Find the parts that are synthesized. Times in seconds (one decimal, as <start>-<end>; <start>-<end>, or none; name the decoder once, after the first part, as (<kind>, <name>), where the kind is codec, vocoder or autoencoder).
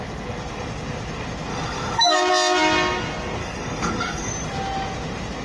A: 1.5-2.2 (codec, DAC); 3.4-4.3